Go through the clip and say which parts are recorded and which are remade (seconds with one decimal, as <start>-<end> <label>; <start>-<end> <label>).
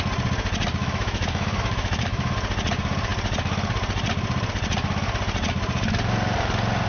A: 0.0-0.8 recorded; 0.8-2.3 remade; 2.3-6.9 recorded